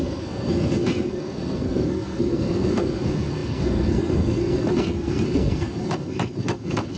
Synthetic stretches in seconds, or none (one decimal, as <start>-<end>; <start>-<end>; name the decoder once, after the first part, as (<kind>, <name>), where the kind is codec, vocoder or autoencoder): 0.0-7.0 (codec, SNAC)